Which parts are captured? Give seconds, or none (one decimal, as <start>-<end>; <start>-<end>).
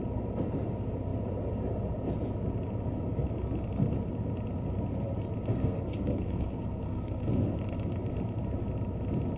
0.0-5.5; 7.6-9.4